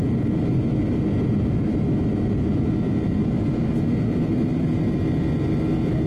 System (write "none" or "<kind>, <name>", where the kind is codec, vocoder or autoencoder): none